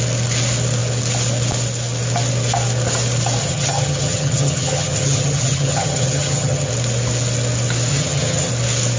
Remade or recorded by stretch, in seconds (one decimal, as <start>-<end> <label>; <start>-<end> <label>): 0.0-3.4 recorded; 3.4-6.7 remade; 6.7-7.9 recorded; 7.9-8.5 remade; 8.5-9.0 recorded